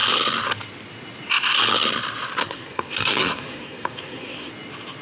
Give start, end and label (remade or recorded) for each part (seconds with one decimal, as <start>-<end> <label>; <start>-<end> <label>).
0.0-2.4 recorded; 2.4-4.5 remade; 4.5-5.0 recorded